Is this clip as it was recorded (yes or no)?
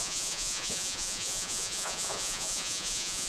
no